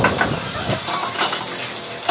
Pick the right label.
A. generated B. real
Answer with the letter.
B